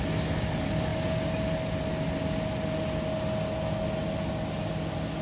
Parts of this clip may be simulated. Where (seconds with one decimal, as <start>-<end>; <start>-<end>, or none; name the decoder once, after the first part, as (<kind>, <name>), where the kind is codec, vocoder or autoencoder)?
none